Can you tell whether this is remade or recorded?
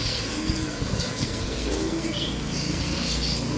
remade